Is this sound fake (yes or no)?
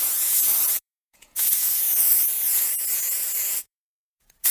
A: yes